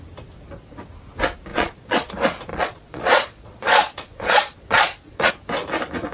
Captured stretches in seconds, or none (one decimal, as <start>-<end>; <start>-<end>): 0.0-1.5; 2.1-2.5; 5.3-6.1

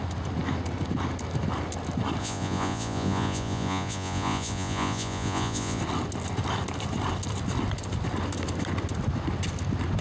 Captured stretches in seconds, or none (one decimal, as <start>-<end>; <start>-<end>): 0.0-2.2; 5.8-10.0